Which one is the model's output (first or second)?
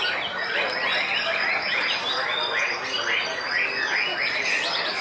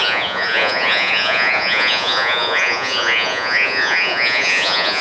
second